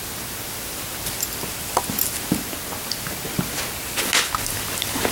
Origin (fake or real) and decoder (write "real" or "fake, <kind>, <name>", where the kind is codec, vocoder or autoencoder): real